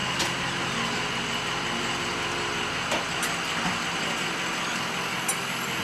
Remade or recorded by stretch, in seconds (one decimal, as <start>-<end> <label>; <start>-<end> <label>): 0.0-5.8 recorded